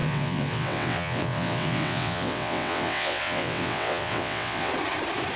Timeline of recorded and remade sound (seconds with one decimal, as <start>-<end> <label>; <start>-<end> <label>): 0.0-4.7 remade; 4.7-5.4 recorded